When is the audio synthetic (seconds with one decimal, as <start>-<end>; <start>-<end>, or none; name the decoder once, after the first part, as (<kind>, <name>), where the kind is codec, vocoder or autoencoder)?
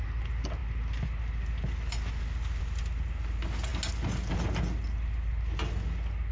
none